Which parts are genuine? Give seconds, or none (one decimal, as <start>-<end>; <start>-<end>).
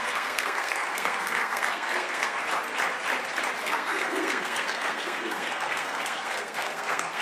2.4-3.6